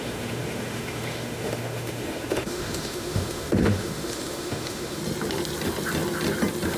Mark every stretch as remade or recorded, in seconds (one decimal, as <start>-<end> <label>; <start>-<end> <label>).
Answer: 0.0-5.0 remade; 5.0-6.8 recorded